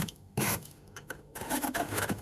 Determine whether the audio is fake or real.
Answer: fake